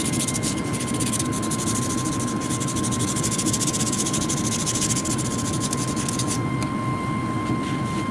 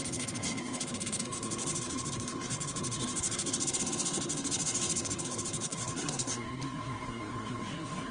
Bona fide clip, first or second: first